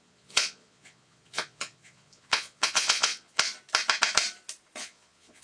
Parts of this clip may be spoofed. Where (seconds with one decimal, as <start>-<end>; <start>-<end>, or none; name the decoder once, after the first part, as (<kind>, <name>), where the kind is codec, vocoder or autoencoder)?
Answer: 0.0-3.5 (vocoder, Vocos); 4.8-5.4